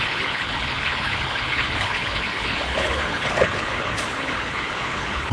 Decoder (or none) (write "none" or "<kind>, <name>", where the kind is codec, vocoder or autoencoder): codec, HILCodec